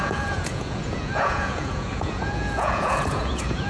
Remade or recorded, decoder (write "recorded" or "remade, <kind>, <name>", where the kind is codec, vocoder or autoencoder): remade, vocoder, Vocos